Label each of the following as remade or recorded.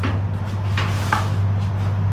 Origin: recorded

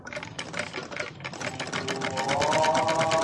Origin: recorded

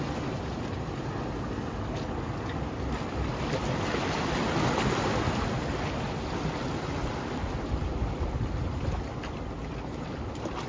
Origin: recorded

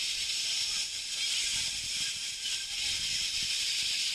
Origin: recorded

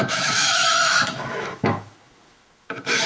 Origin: remade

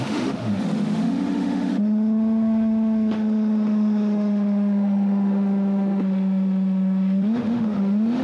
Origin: remade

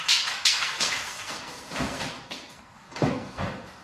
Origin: remade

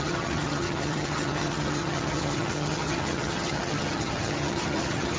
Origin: remade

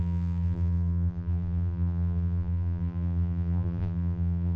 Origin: remade